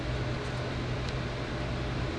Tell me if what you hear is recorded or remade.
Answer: recorded